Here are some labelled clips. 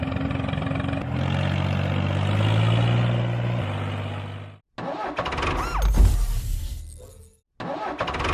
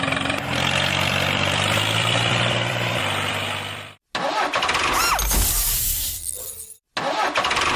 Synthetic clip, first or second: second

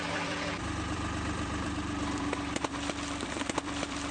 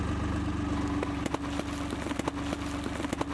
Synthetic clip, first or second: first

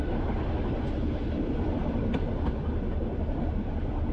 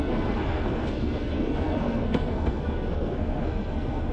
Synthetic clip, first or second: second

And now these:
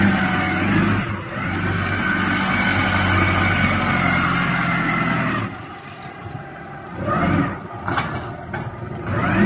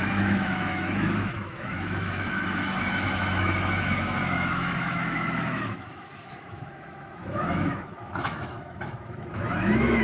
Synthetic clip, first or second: second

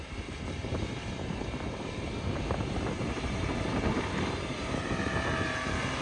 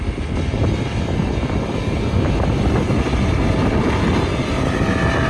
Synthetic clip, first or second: first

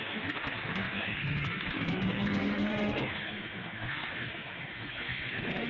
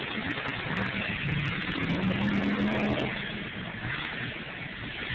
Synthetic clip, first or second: first